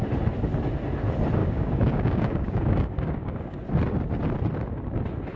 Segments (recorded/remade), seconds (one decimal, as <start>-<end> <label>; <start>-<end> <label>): 0.0-1.4 recorded; 1.4-3.6 remade; 3.6-5.4 recorded